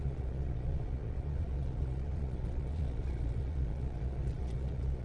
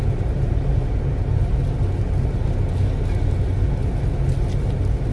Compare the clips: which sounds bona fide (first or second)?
second